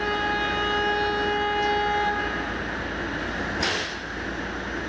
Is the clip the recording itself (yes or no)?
yes